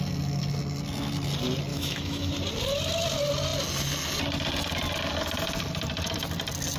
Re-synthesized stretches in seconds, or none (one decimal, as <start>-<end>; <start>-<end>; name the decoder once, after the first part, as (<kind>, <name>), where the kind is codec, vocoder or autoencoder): 1.7-2.3 (autoencoder, DAC-VAE)